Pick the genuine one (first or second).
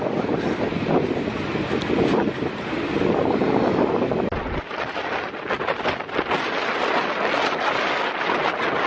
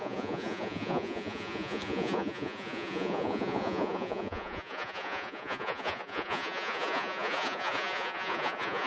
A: first